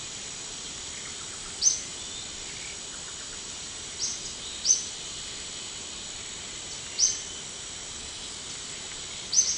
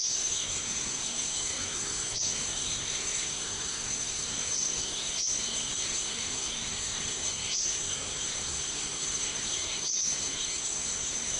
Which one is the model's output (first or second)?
second